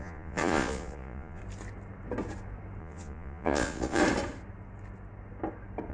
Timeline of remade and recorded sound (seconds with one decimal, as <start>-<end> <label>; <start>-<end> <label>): 0.0-1.4 remade; 1.4-2.8 recorded; 2.8-4.0 remade; 4.0-5.9 recorded